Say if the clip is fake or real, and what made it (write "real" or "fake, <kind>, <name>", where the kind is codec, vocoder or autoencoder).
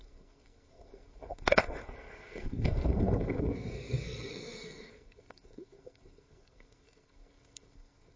fake, codec, SNAC